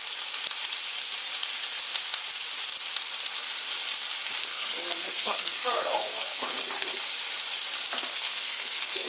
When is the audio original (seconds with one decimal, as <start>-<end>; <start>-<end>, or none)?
0.0-4.4; 6.9-8.1